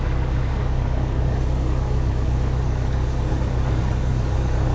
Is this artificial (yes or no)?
yes